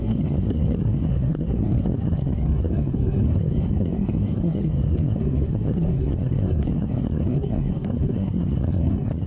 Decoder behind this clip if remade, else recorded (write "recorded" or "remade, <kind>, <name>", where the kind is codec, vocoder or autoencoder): remade, codec, SNAC